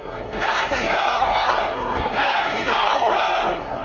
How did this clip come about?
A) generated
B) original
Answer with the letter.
A